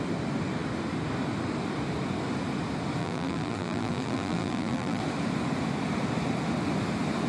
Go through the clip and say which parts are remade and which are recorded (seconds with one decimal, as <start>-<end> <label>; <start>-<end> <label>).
0.0-3.0 recorded; 3.0-5.0 remade; 5.0-7.3 recorded